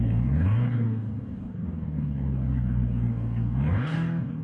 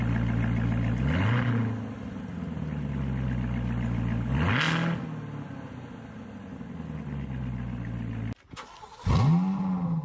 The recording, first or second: second